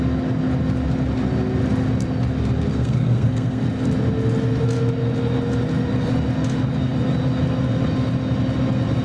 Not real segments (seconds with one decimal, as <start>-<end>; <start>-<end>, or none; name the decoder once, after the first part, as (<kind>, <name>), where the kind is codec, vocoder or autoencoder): 2.7-3.6 (codec, SNAC)